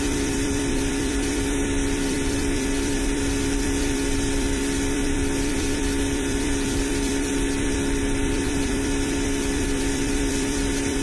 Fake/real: fake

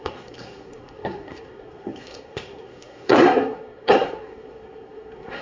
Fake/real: fake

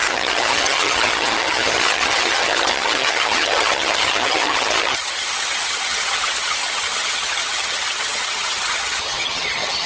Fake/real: fake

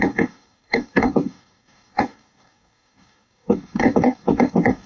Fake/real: fake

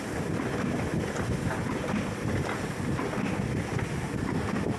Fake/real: real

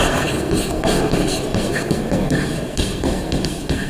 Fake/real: fake